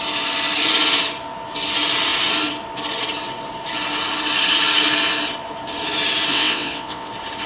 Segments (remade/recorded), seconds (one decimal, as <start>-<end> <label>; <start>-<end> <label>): 0.0-6.3 recorded; 6.3-7.1 remade; 7.1-7.5 recorded